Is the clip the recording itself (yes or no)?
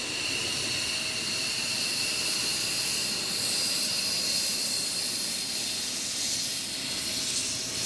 yes